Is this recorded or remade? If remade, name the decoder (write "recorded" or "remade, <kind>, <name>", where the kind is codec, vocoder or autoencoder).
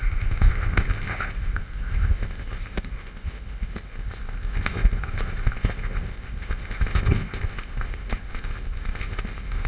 remade, codec, ZipCodec